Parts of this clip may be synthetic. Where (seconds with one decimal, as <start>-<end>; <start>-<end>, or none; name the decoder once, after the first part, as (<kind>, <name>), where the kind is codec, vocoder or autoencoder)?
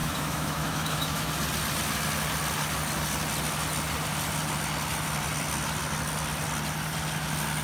0.0-1.3 (autoencoder, DAC-VAE)